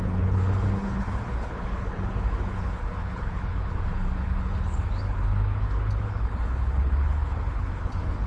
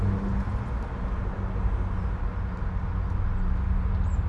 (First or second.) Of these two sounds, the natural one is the second